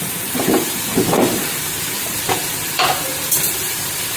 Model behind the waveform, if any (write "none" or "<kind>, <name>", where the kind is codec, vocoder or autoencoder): vocoder, BigVGAN v2